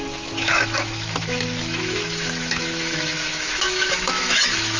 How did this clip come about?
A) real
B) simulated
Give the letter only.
B